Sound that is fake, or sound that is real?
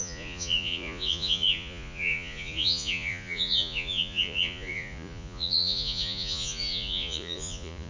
fake